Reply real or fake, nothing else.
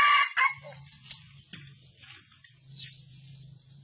real